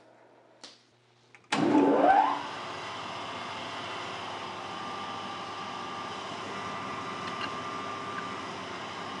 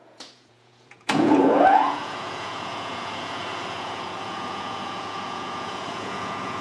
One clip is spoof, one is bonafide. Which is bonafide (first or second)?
first